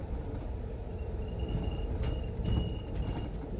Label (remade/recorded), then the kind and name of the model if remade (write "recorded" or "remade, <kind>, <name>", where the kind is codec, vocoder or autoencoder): recorded